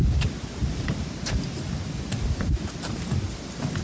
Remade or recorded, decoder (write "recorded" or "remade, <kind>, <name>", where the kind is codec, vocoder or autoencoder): recorded